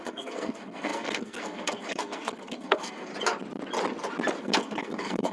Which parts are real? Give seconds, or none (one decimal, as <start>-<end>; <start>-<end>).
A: 3.1-4.4